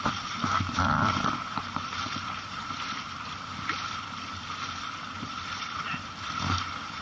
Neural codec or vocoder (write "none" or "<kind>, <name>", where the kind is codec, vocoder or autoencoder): none